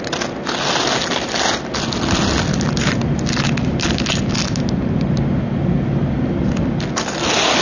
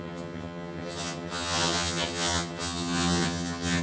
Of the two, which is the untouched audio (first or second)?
first